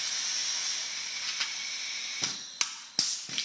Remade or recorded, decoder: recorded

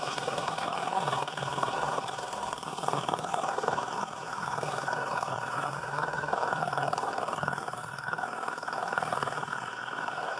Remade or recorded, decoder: remade, codec, SNAC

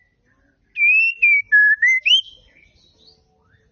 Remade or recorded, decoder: recorded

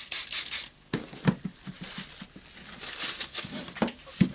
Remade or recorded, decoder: recorded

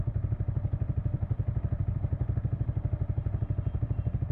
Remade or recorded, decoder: recorded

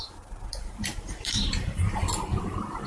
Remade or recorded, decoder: remade, vocoder, BigVGAN v2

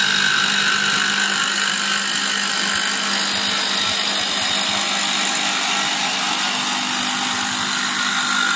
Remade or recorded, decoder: recorded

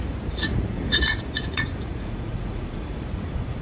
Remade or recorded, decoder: remade, vocoder, Vocos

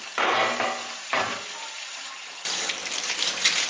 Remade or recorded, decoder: recorded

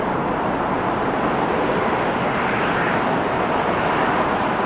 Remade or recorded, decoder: recorded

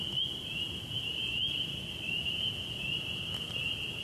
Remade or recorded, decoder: recorded